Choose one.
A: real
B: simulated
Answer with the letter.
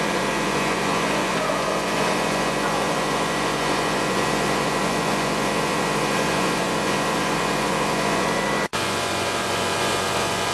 B